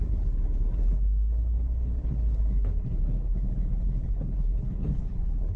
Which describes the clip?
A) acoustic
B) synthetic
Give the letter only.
B